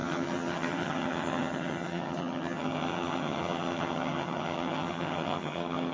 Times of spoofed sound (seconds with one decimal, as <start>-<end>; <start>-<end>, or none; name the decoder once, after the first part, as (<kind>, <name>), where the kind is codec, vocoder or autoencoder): 0.0-5.9 (vocoder, HiFi-GAN)